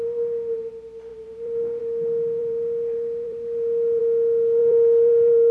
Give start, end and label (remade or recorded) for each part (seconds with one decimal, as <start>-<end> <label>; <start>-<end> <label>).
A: 0.0-1.1 recorded; 1.1-1.8 remade; 1.8-2.4 recorded; 2.4-4.0 remade; 4.0-4.6 recorded; 4.6-5.5 remade

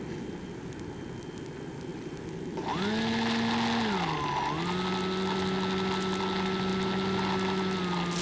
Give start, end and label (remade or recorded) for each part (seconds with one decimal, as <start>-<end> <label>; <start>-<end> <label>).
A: 0.0-8.2 recorded